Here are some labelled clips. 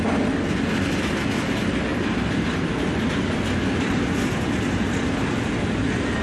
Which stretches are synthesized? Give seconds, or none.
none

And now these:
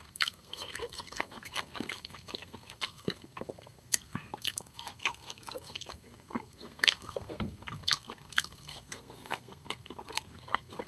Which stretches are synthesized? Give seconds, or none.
0.0-10.9

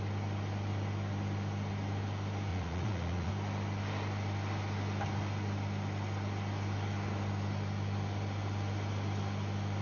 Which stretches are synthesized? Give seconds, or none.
2.5-3.3